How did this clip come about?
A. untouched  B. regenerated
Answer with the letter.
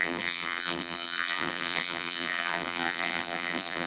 B